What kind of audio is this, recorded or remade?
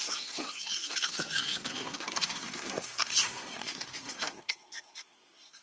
remade